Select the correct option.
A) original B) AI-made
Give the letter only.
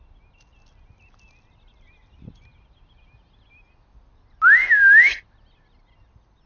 A